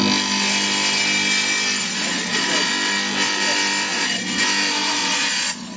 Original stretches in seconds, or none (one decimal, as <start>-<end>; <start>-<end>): 0.0-1.8; 2.7-3.9; 4.4-5.0

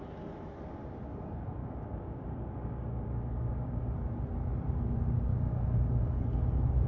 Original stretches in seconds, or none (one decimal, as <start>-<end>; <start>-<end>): 0.0-1.6; 3.9-5.3; 6.0-6.9

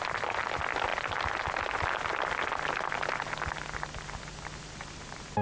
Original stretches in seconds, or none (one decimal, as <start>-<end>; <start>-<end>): 0.0-0.9; 1.6-5.4

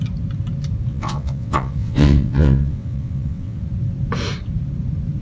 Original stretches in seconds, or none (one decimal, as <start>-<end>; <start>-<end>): 0.0-0.9; 3.6-5.2

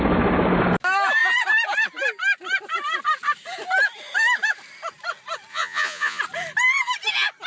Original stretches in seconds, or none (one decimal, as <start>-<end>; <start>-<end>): 0.0-5.5; 6.2-7.5

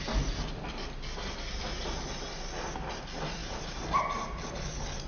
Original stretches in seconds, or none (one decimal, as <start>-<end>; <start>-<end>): 0.0-3.4; 4.0-5.1

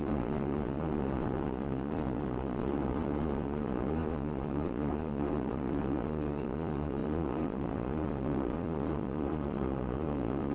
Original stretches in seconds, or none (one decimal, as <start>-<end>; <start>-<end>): none

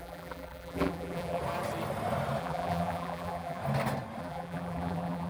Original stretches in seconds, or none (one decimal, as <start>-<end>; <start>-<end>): 1.4-2.4; 3.6-4.2